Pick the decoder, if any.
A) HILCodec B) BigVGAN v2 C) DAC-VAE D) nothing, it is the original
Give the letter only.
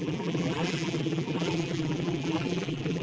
B